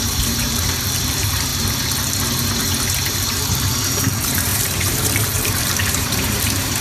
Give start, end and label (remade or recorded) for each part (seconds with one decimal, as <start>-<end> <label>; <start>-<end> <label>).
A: 0.0-1.5 remade; 1.5-3.1 recorded; 3.1-6.8 remade